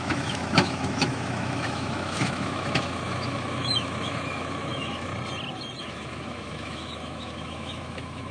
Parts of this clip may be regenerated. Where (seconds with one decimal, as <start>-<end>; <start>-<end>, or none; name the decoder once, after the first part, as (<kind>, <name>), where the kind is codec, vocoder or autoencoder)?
0.0-5.1 (autoencoder, DAC-VAE); 5.8-8.3

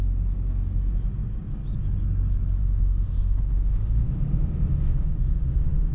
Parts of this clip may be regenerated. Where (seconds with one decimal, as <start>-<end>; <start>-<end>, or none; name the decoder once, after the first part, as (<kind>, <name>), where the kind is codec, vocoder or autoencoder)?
2.6-5.9 (autoencoder, DAC-VAE)

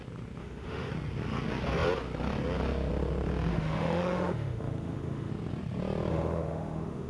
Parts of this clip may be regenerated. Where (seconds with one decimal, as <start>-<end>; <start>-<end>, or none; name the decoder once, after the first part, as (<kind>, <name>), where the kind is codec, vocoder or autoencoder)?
0.4-0.9 (autoencoder, DAC-VAE); 3.5-5.3; 6.1-7.1

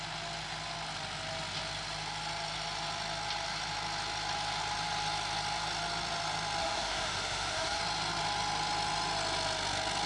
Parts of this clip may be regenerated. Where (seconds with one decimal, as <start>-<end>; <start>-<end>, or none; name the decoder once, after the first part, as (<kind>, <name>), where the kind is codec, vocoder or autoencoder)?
6.6-7.8 (autoencoder, DAC-VAE)

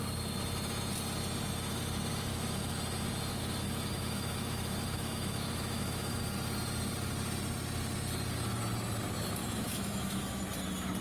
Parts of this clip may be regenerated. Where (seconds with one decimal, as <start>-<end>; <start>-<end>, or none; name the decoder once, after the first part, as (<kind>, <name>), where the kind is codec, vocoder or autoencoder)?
2.3-2.8 (autoencoder, DAC-VAE); 3.3-6.2; 9.4-10.4